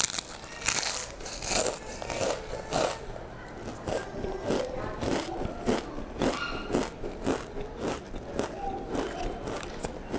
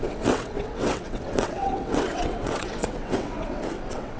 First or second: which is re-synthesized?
second